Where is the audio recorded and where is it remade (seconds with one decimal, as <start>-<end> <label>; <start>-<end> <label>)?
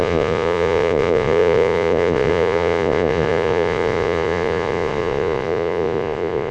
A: 0.0-6.5 remade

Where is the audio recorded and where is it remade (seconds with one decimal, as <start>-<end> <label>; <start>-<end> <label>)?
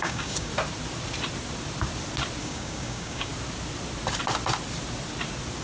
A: 0.0-0.5 remade; 0.5-2.4 recorded; 2.4-3.3 remade; 3.3-5.6 recorded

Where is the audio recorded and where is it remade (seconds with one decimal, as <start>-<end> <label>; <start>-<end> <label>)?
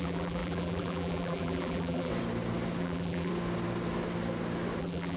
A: 0.0-2.1 remade; 2.1-2.8 recorded; 2.8-3.3 remade; 3.3-4.8 recorded; 4.8-5.2 remade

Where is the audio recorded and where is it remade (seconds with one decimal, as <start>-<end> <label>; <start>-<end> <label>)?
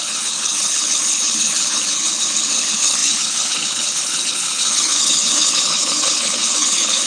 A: 0.0-7.1 remade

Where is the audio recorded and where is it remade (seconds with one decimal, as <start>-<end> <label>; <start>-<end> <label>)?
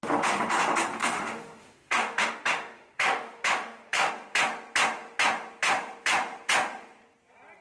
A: 0.0-1.0 recorded; 1.0-4.1 remade; 4.1-7.6 recorded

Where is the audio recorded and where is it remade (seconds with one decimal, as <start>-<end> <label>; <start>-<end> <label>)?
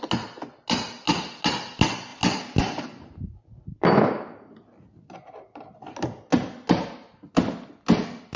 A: 0.0-8.4 recorded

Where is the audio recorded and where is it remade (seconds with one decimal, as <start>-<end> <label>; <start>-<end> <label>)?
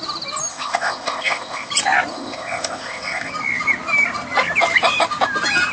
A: 0.0-0.5 recorded; 0.5-1.7 remade; 1.7-2.1 recorded; 2.1-3.3 remade; 3.3-5.7 recorded